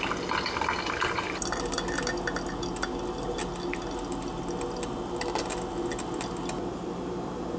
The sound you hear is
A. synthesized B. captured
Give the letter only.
B